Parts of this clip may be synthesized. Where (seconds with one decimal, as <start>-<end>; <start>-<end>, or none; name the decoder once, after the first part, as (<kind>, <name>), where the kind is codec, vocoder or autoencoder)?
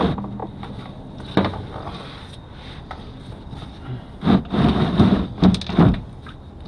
none